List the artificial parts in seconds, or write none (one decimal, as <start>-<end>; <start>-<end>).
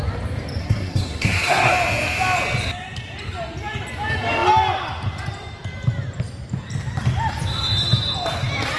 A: 0.6-1.7